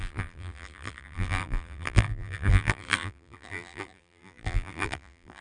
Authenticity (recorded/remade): remade